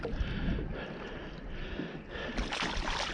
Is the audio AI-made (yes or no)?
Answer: no